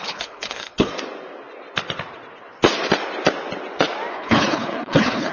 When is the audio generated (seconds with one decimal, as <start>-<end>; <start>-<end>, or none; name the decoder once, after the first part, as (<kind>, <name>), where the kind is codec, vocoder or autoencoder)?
0.0-0.9 (codec, HILCodec); 4.1-5.3